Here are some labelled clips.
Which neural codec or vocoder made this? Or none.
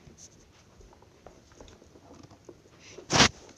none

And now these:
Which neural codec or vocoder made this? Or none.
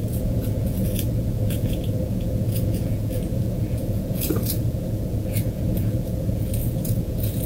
vocoder, Vocos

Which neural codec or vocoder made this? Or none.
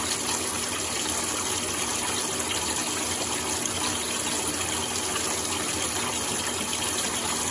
none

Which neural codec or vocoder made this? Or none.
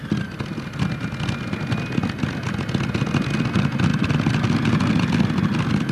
none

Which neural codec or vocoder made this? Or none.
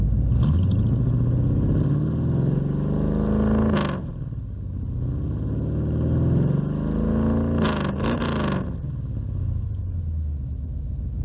none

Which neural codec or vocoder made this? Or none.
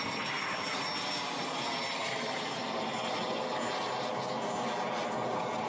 none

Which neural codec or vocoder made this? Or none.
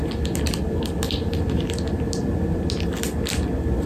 none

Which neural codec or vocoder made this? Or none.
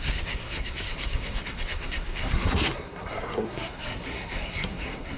codec, SNAC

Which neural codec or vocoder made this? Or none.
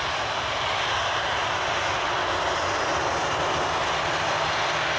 none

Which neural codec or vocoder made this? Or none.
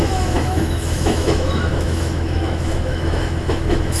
autoencoder, DAC-VAE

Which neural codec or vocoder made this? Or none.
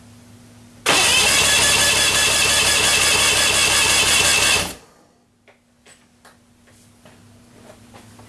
none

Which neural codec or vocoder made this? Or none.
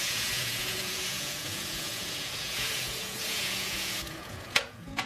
vocoder, Vocos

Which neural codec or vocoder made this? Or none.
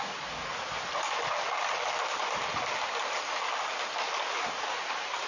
none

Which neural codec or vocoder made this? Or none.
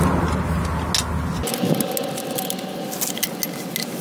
none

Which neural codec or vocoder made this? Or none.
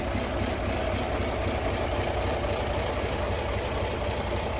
none